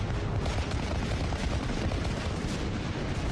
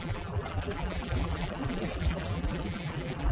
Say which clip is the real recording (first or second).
first